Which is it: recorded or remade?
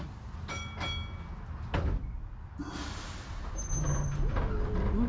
recorded